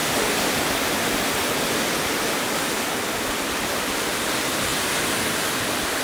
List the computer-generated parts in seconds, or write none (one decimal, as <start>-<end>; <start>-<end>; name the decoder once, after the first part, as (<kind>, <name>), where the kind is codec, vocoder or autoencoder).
none